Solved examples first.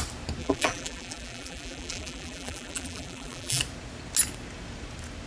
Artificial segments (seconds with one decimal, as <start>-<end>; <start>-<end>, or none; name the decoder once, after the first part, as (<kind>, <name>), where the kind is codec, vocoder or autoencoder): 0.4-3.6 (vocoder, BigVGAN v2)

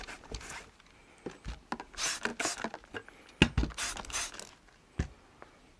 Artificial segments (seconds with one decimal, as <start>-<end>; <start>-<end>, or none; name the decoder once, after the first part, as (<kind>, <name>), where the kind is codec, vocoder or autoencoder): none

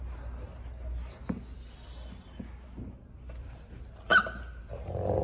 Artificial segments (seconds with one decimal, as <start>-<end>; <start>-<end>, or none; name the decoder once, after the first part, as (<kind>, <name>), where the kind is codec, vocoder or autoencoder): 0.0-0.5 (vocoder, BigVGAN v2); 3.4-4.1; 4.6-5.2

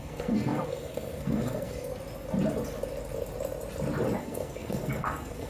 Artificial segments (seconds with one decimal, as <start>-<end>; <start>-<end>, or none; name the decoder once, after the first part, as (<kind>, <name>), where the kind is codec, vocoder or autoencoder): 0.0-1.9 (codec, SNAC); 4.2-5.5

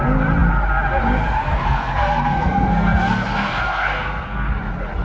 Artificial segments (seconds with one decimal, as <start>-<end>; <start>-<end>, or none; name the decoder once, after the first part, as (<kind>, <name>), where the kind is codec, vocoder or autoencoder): 1.5-4.5 (codec, SNAC)

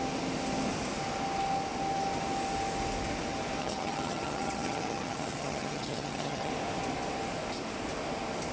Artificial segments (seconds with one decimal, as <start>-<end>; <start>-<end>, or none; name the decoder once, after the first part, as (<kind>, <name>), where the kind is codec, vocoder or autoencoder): 3.6-6.5 (vocoder, HiFi-GAN)

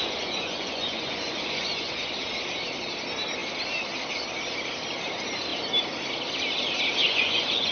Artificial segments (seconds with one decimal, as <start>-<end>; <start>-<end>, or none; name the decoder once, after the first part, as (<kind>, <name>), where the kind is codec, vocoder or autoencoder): 0.0-2.1 (vocoder, Vocos); 7.0-7.7

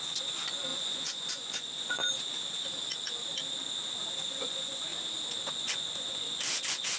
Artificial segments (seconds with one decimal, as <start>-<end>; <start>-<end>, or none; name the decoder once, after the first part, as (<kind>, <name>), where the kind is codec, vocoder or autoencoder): 0.0-2.0 (vocoder, Vocos); 4.3-4.9; 5.5-7.0